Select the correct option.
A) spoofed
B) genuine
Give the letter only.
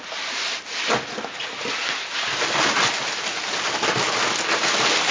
B